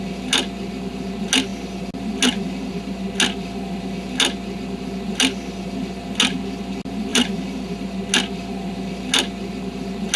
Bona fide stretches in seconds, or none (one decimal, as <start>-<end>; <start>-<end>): 0.0-7.1; 7.8-10.2